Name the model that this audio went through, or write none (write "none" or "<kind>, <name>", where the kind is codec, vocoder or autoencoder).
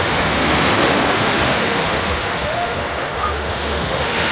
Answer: autoencoder, DAC-VAE